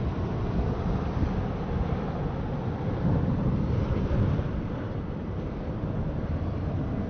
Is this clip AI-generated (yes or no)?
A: no